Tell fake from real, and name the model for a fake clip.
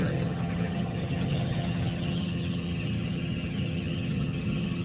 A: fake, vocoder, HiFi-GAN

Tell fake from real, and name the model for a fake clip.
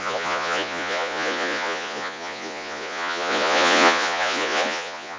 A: fake, vocoder, Vocos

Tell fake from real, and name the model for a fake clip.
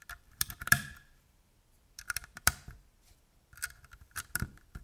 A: fake, vocoder, BigVGAN v2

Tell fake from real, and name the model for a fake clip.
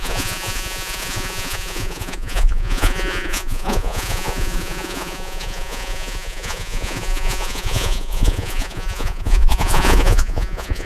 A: fake, vocoder, Vocos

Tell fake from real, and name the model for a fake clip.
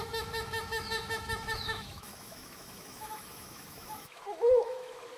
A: fake, autoencoder, DAC-VAE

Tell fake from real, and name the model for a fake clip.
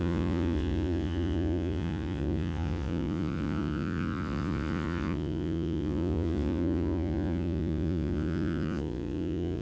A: fake, vocoder, Vocos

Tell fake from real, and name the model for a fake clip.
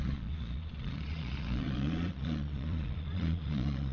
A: fake, vocoder, Vocos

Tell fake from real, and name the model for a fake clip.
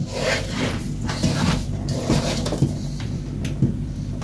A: fake, vocoder, BigVGAN v2